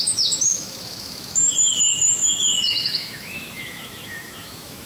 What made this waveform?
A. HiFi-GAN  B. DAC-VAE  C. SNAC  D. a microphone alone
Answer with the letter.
B